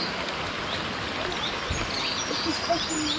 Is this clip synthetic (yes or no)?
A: no